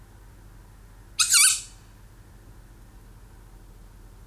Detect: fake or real real